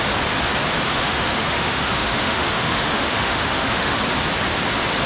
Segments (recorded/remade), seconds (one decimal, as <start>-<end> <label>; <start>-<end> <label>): 0.0-0.9 recorded; 0.9-4.0 remade; 4.0-5.1 recorded